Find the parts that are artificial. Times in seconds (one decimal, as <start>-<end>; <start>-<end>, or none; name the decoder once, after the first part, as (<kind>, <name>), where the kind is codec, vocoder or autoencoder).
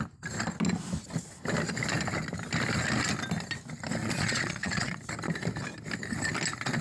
4.0-5.0 (vocoder, Vocos)